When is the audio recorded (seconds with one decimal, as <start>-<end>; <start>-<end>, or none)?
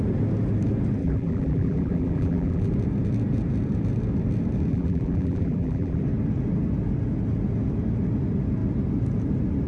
0.0-1.0; 2.7-4.7; 6.0-9.7